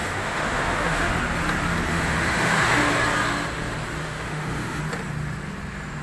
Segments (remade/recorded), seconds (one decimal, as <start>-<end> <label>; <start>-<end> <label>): 0.0-1.1 remade; 1.1-1.9 recorded; 1.9-2.9 remade; 2.9-4.0 recorded; 4.0-4.8 remade; 4.8-6.0 recorded